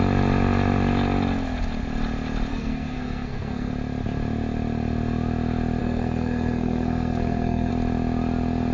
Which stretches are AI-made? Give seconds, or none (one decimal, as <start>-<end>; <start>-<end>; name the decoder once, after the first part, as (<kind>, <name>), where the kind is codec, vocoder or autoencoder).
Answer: 2.5-3.7 (codec, SNAC); 5.8-7.7